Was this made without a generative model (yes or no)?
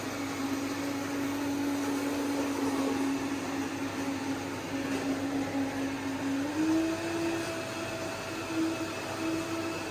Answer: yes